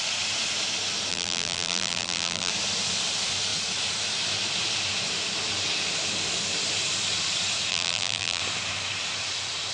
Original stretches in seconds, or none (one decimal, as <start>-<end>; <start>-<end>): 0.0-1.1; 2.5-7.7; 8.4-9.7